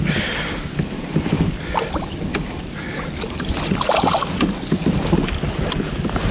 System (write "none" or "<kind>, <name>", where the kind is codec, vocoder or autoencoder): none